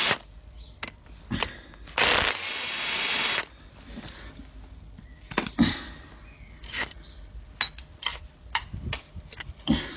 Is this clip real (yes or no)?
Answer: yes